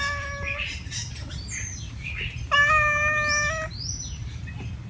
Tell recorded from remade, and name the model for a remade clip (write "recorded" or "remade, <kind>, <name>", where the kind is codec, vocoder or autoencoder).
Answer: recorded